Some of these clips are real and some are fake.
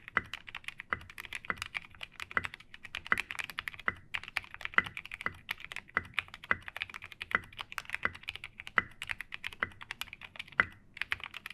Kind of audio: real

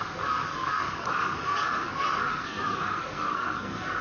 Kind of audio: fake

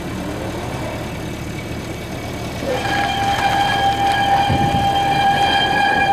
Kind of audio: real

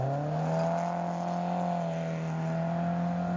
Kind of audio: real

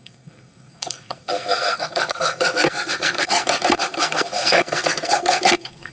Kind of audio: fake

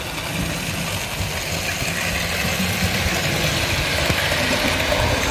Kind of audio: real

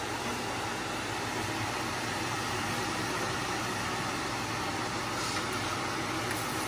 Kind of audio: real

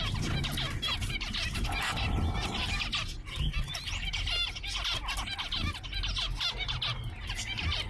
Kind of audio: real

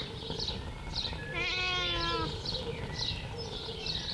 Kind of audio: real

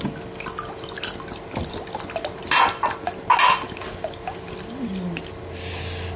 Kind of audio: real